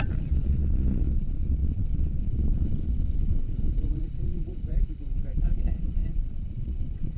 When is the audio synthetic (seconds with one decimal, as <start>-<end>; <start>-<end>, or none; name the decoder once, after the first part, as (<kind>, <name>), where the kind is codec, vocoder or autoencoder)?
0.0-7.2 (vocoder, Vocos)